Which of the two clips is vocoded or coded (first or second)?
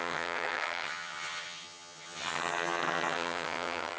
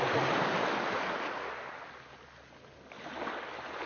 first